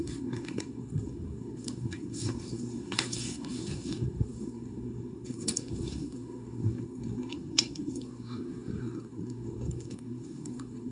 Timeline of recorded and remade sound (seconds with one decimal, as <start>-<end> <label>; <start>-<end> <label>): 0.0-10.9 remade

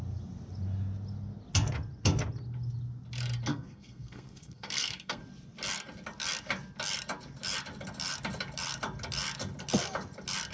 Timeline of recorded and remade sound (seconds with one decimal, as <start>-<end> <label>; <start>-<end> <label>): 0.0-3.5 recorded; 3.5-5.2 remade; 5.2-10.5 recorded